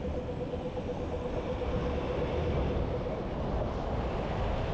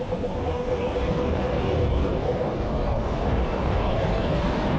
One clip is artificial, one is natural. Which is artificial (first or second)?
second